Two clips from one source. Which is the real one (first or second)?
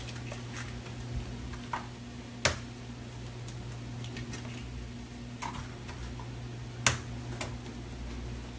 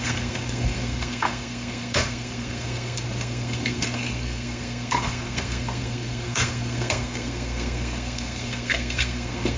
first